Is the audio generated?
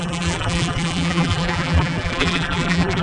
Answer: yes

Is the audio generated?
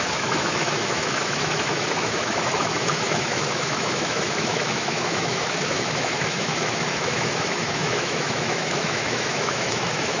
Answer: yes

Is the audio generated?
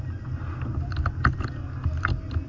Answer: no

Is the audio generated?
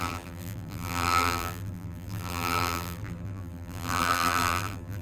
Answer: yes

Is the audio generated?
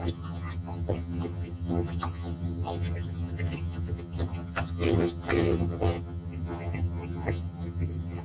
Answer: yes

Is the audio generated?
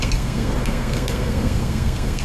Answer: yes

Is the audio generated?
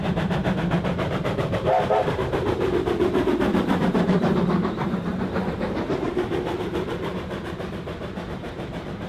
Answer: yes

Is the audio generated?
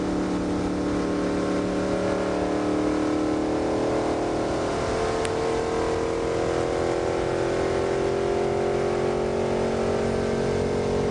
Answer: no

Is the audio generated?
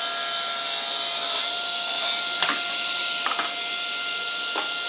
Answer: no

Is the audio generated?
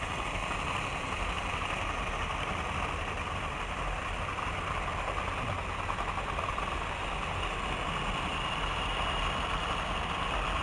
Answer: no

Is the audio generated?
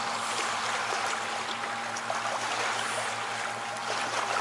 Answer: no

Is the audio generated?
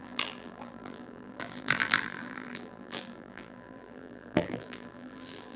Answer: yes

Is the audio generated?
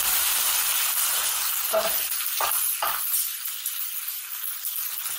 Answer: no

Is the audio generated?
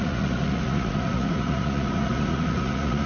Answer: yes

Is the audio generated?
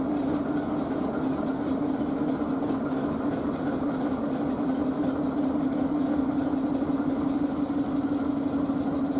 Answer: no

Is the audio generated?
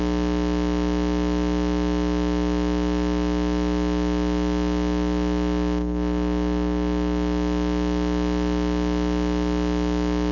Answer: no